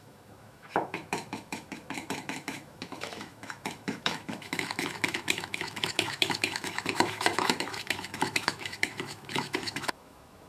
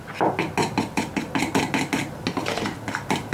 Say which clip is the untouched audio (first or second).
second